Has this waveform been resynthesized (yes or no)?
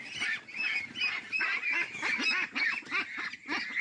no